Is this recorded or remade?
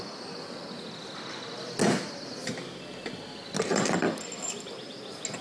recorded